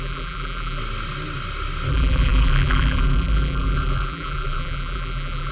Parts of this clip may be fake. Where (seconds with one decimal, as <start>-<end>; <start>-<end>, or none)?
0.0-0.8; 1.9-5.5